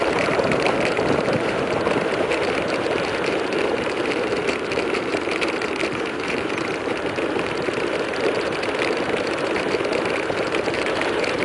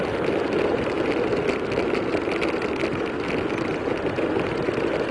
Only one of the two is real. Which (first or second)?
second